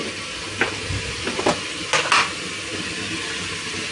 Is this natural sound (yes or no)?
yes